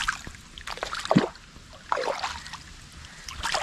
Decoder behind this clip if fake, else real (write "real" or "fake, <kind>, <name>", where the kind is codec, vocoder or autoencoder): real